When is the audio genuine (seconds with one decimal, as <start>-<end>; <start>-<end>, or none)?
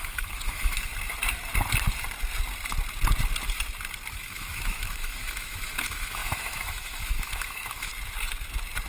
0.9-4.1; 7.9-8.9